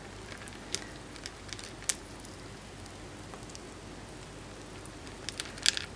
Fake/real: real